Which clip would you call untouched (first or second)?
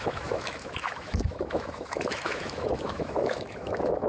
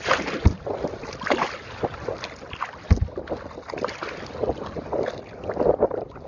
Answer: second